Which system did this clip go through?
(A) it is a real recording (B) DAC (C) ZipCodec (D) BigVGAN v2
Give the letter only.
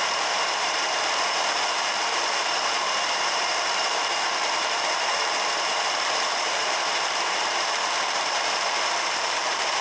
D